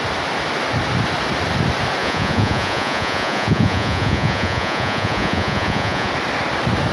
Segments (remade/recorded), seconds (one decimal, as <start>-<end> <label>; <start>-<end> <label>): 0.0-2.0 recorded; 2.0-6.1 remade; 6.1-6.9 recorded